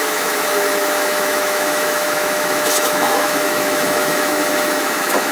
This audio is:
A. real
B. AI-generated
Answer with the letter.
B